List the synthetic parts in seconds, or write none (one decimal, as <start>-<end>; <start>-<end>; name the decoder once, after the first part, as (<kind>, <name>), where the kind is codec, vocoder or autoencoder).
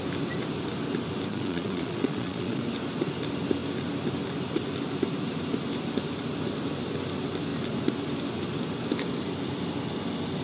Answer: 1.3-2.6 (vocoder, Vocos)